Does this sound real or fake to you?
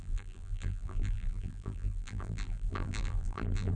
fake